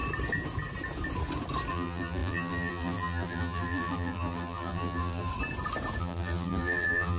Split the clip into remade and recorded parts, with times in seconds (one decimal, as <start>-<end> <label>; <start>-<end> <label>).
0.0-1.7 recorded; 1.7-5.3 remade; 5.3-6.0 recorded; 6.0-7.2 remade